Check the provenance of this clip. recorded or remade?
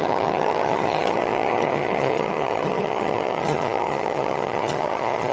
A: remade